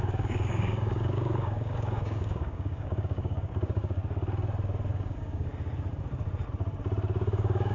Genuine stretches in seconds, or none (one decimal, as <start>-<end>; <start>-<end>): 4.0-4.9; 5.5-7.2